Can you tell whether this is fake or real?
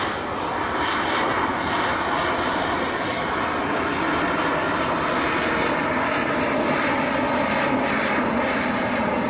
real